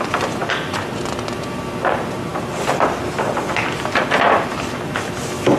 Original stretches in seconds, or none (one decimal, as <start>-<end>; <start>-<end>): 0.0-0.4; 1.0-5.6